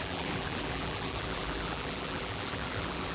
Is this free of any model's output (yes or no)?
no